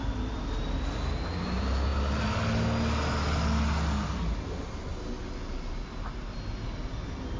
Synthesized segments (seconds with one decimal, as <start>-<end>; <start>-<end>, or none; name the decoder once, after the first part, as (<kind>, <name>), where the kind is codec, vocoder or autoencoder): none